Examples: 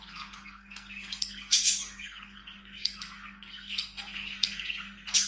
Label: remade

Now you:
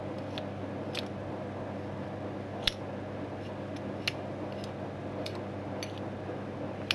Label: recorded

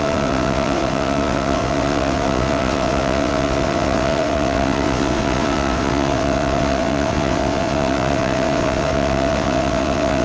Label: remade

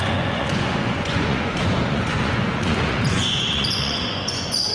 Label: remade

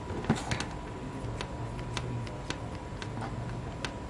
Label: recorded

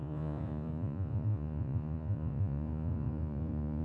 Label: remade